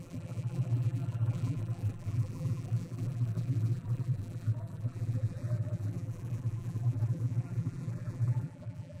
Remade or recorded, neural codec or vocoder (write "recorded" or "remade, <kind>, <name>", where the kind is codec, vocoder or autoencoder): remade, vocoder, BigVGAN v2